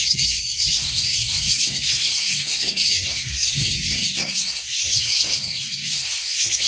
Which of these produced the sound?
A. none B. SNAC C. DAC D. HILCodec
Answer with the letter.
B